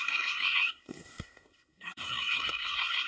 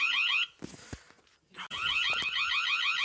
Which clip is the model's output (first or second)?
first